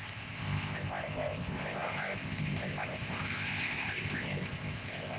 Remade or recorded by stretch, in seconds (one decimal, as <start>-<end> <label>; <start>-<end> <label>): 0.0-5.2 remade